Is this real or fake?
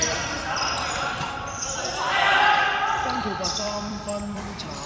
fake